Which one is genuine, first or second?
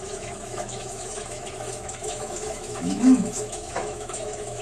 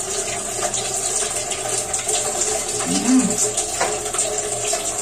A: second